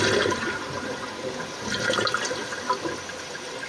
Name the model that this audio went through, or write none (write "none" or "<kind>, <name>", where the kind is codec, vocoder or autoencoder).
none